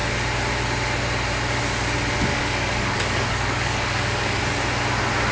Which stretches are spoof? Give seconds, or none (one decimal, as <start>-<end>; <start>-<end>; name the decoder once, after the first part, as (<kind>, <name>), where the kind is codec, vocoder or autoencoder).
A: 2.3-4.4 (codec, DAC)